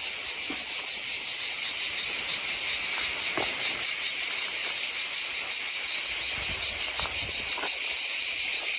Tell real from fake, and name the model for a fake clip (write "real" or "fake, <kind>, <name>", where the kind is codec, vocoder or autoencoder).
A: real